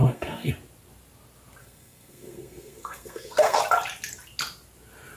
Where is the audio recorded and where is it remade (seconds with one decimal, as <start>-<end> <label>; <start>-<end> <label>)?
0.0-0.5 remade; 0.5-1.6 recorded; 1.6-3.6 remade; 3.6-5.2 recorded